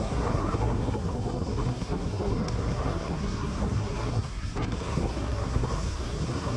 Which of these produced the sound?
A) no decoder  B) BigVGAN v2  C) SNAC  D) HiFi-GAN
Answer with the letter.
C